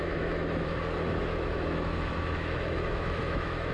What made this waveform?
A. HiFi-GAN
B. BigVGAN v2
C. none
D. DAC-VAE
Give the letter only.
D